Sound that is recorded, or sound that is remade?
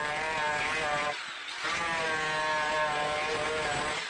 recorded